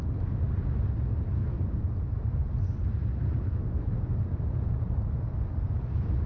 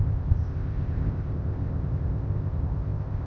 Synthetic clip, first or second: second